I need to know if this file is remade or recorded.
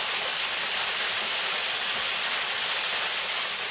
recorded